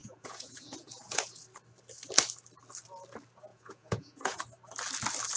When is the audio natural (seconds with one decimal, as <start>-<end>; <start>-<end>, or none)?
1.2-3.5; 4.4-5.4

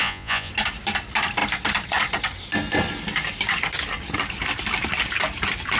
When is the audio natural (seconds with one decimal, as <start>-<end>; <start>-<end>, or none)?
0.5-5.8

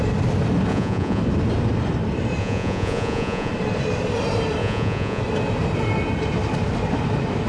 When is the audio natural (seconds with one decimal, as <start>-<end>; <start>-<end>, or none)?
0.0-0.7; 1.2-2.4; 3.5-4.6; 5.2-7.5

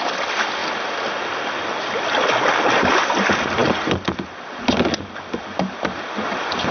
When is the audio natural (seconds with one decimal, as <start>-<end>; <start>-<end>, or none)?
0.0-6.7

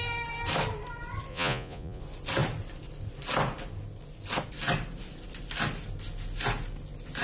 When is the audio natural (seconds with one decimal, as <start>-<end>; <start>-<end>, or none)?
0.0-1.3; 2.0-7.2

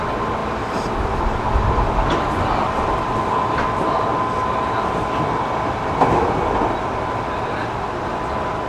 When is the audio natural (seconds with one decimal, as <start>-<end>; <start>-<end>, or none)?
0.0-8.7

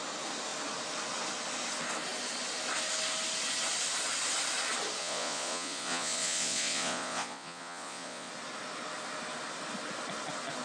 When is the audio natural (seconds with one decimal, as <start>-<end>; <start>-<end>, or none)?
0.0-5.0; 8.3-10.6